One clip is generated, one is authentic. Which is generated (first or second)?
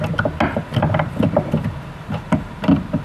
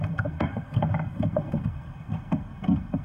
second